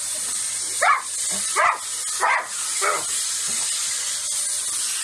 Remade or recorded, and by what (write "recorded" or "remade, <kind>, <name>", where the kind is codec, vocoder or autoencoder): recorded